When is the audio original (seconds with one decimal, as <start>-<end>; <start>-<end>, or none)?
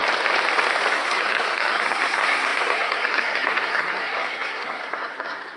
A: 0.0-0.9